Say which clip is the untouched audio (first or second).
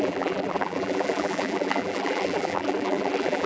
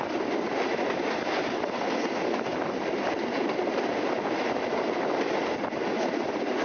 second